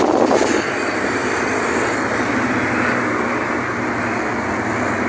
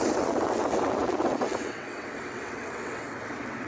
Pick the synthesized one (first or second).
second